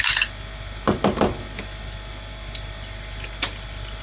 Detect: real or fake real